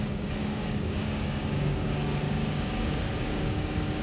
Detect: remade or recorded remade